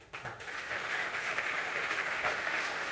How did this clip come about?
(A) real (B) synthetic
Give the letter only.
B